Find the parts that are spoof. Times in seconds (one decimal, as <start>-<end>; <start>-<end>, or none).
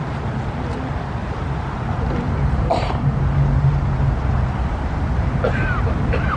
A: 1.2-3.2; 4.6-6.4